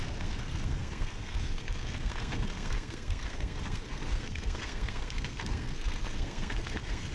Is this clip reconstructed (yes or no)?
yes